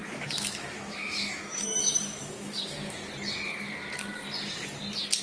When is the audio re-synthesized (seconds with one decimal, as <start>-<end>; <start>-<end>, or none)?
0.0-3.1